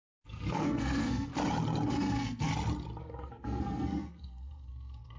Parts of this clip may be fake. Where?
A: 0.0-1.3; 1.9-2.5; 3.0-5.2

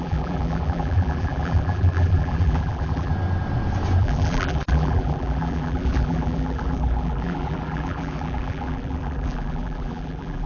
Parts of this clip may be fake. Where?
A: 0.0-3.1; 4.0-10.5

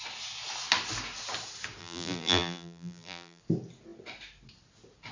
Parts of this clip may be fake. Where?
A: 1.8-3.4

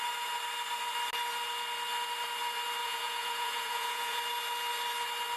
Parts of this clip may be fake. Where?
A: 2.8-4.2